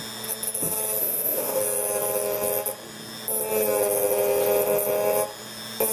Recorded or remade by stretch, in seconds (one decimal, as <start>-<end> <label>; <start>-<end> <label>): 0.0-1.0 recorded; 1.0-1.6 remade; 1.6-5.9 recorded